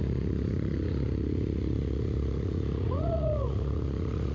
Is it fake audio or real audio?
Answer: fake